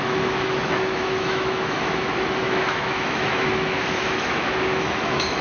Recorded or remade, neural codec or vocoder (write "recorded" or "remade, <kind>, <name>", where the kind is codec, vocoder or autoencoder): remade, autoencoder, DAC-VAE